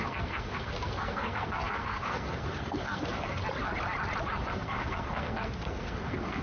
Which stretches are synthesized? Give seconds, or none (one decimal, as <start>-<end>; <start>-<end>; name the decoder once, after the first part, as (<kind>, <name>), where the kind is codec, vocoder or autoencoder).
0.0-3.4 (codec, SNAC); 4.4-6.4